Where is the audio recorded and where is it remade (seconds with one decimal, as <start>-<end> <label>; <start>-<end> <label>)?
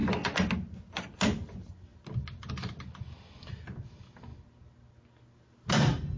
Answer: 0.0-6.2 recorded